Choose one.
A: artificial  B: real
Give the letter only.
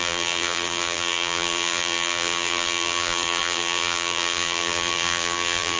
A